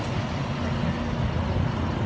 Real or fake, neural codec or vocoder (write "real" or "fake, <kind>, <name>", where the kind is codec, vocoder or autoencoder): real